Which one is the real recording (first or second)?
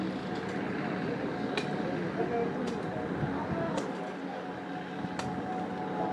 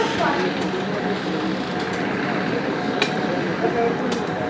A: first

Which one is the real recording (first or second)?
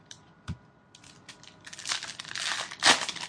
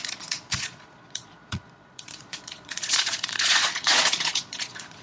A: first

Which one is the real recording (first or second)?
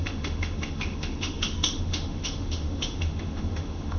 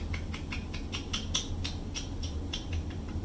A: second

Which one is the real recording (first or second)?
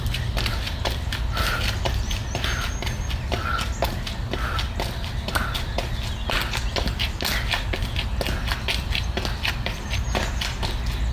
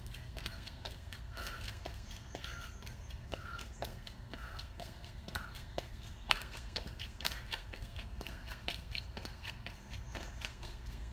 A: first